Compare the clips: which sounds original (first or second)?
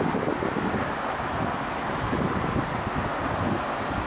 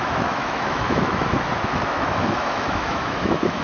first